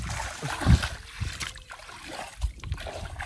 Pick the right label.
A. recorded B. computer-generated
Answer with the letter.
A